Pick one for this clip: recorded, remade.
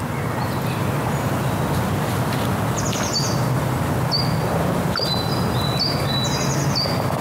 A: recorded